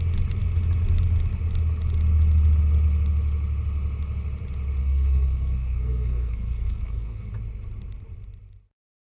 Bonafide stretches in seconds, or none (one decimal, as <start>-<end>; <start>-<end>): 0.0-4.8; 7.3-9.0